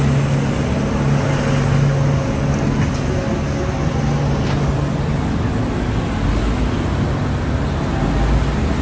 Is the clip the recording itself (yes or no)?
yes